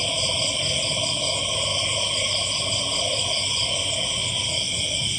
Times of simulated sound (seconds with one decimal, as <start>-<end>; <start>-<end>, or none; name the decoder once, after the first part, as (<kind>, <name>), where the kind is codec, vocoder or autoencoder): none